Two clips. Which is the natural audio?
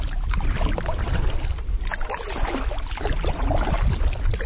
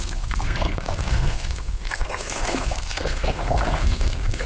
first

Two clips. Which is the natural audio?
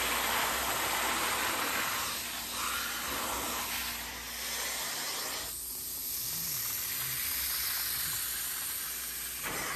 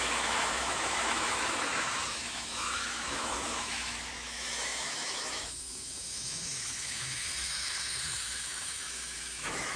first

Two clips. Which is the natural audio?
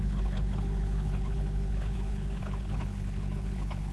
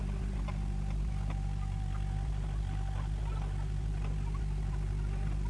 second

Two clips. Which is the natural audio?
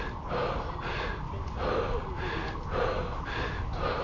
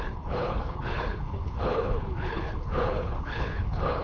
first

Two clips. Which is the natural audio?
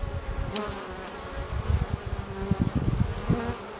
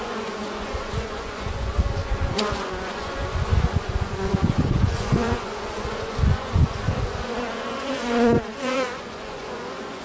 first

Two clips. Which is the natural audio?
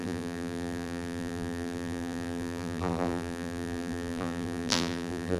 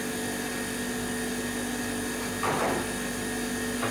second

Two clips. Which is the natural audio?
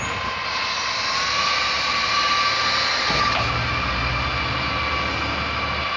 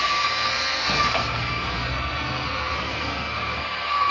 first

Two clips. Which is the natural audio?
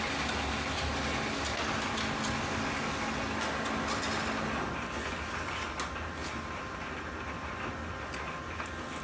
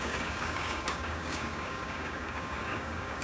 first